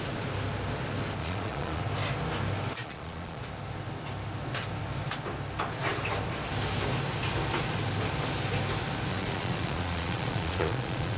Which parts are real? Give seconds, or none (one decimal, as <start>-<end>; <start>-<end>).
0.0-1.2; 1.8-2.8; 3.4-9.1